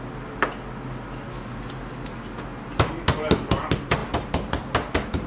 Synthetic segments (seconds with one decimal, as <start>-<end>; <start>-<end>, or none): none